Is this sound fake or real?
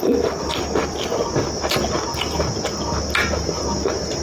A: real